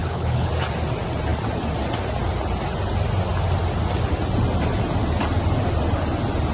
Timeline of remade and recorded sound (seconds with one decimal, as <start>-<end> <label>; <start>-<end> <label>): 0.0-0.5 remade; 0.5-6.5 recorded